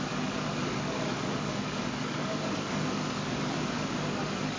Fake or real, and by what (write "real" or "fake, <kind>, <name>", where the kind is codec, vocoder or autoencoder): fake, codec, DAC